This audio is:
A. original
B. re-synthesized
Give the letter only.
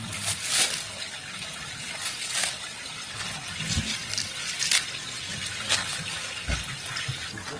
A